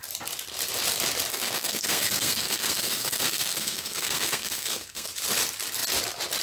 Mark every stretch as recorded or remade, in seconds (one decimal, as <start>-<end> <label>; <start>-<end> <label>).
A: 0.0-1.3 recorded; 1.3-5.1 remade; 5.1-6.4 recorded